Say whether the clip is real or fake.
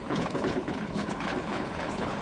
fake